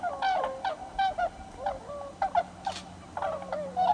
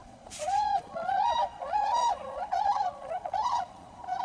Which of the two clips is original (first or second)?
first